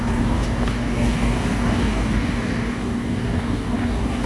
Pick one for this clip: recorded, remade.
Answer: remade